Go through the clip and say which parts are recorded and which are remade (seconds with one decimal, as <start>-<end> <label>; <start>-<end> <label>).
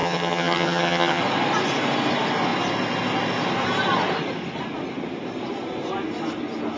0.0-1.2 remade; 1.2-6.8 recorded